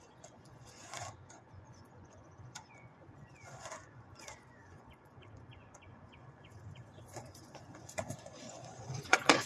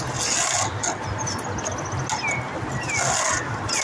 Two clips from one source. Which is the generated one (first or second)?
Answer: first